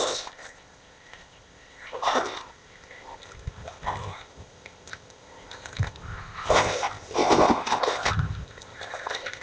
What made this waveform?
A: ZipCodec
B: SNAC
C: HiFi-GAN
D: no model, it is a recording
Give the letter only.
A